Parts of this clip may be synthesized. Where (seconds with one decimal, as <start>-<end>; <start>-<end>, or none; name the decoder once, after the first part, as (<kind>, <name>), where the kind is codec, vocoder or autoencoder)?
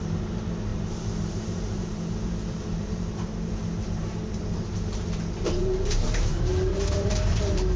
0.0-7.8 (vocoder, BigVGAN v2)